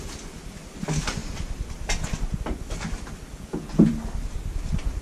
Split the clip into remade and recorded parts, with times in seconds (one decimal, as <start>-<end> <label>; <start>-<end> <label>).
0.0-3.3 recorded; 3.3-3.9 remade; 3.9-5.0 recorded